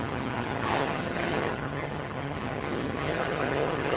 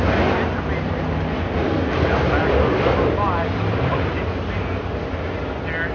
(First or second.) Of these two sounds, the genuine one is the second